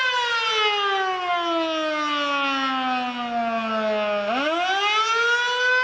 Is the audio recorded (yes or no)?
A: yes